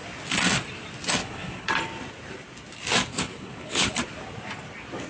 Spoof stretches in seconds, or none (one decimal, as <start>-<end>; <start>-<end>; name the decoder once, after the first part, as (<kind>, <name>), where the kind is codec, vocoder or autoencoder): 1.2-1.7 (codec, HILCodec); 3.1-3.9